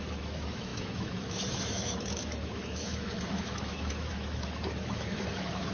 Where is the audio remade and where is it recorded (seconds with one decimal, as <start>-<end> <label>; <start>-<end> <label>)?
0.0-5.7 remade